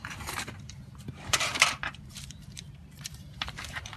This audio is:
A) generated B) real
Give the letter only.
A